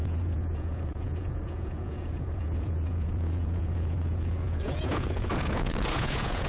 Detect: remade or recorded remade